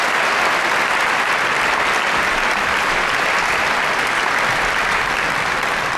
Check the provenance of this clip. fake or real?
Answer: real